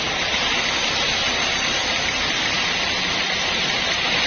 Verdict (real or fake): real